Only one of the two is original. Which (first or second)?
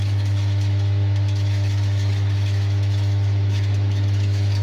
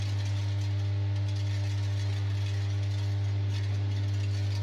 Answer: second